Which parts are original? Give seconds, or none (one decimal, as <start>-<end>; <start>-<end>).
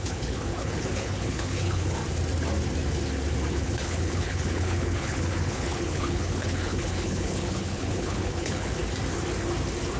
2.0-3.5; 8.8-10.0